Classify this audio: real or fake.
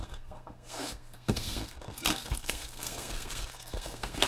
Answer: fake